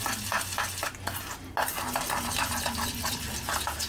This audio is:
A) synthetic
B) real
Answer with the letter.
B